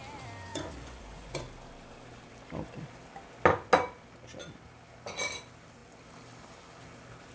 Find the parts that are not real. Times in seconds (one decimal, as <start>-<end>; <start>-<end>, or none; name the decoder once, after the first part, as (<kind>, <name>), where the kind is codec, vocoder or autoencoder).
0.5-1.4 (vocoder, Vocos)

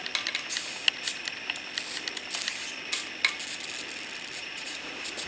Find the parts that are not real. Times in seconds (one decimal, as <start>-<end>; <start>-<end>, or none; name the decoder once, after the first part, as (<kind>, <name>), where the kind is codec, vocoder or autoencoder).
4.4-5.3 (vocoder, Vocos)

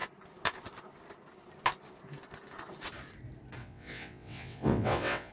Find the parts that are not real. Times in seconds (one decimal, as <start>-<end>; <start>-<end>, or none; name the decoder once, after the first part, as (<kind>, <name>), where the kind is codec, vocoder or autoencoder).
3.6-5.3 (vocoder, WaveNeXt)